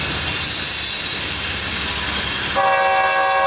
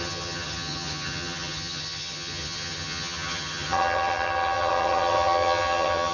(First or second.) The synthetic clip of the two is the second